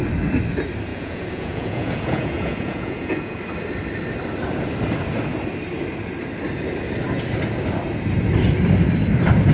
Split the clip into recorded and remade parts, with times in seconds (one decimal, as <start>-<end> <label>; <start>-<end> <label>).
0.0-0.9 recorded; 0.9-3.4 remade; 3.4-9.5 recorded